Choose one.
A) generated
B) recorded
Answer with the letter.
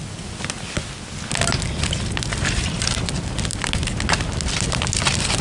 B